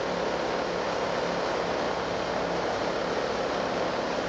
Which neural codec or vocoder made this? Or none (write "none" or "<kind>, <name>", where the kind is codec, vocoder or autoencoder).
none